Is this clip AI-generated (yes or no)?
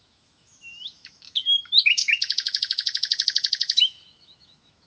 yes